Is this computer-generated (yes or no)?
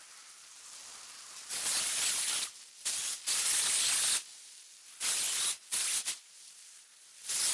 no